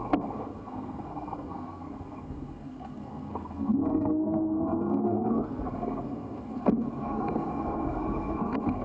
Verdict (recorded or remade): remade